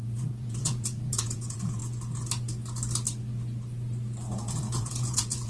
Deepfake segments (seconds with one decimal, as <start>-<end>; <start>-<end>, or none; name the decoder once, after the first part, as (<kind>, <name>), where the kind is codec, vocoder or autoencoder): 0.0-1.8 (vocoder, Vocos); 4.4-5.5